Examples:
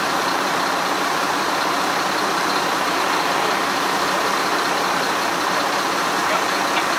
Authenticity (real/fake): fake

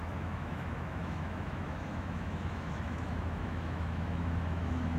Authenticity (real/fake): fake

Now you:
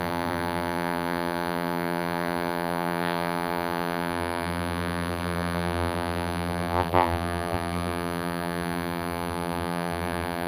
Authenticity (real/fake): fake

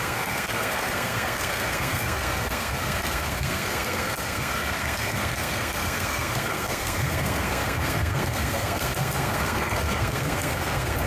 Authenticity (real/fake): fake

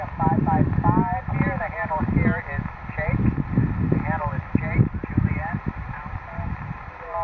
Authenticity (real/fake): real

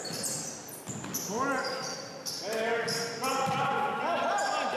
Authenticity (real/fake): real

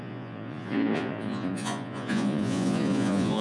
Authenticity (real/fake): fake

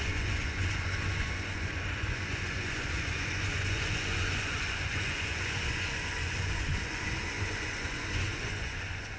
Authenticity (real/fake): fake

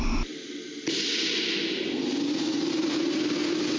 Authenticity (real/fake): real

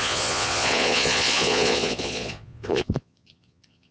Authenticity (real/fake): fake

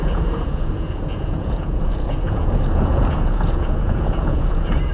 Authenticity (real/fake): fake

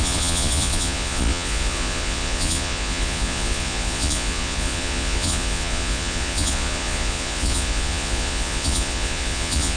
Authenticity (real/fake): fake